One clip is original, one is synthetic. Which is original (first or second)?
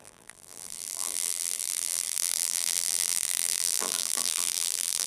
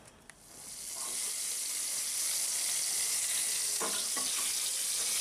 second